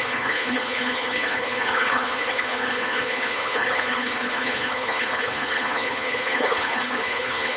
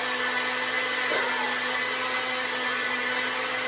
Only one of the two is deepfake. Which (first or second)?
first